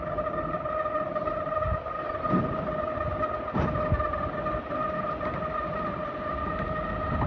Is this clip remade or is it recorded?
recorded